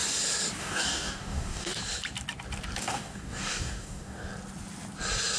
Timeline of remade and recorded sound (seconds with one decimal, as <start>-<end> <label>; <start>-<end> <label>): 0.0-0.6 recorded; 0.6-1.8 remade; 1.8-2.8 recorded; 2.8-4.3 remade; 4.3-5.4 recorded